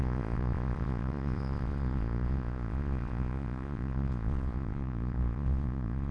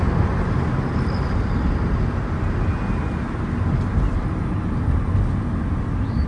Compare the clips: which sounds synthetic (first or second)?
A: first